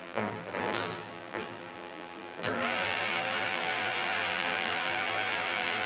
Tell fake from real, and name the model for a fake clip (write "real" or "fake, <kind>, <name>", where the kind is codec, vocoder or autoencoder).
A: fake, vocoder, BigVGAN v2